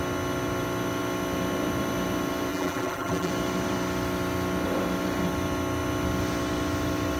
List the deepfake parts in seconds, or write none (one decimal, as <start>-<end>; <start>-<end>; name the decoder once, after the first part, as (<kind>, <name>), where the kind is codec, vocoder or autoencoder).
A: 2.5-3.3 (vocoder, BigVGAN v2)